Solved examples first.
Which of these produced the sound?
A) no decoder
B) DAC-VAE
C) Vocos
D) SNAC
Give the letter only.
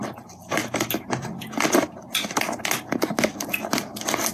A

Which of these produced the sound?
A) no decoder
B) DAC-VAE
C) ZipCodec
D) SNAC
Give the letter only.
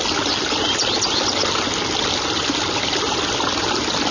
A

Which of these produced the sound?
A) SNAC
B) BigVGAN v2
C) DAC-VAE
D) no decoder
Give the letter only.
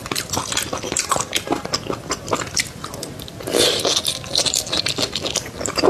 D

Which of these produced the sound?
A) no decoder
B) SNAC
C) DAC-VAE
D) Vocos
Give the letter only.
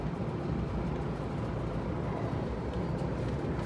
A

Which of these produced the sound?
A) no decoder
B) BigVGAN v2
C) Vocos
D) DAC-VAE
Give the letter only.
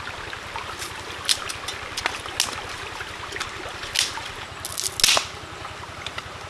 A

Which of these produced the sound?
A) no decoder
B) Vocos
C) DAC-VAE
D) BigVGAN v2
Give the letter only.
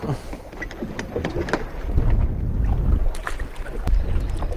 A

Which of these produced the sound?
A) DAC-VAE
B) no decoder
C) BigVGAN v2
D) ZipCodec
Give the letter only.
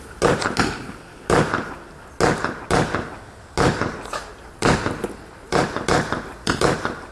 B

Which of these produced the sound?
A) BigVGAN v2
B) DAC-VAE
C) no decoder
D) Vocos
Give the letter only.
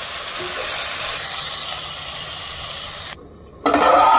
C